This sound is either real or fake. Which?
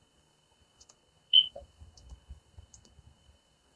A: fake